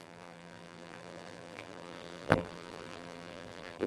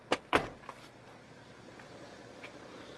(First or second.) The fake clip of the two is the first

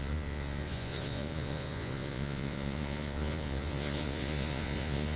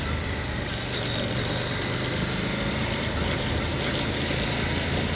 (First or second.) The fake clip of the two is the first